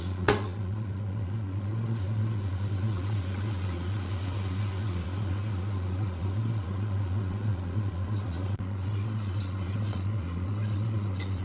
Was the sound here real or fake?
fake